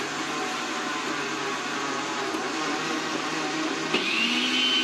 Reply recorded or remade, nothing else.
recorded